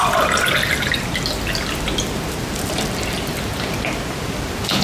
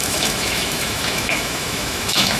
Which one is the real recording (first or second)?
first